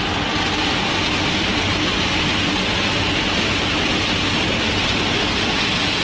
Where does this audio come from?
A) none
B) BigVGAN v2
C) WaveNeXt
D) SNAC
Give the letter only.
A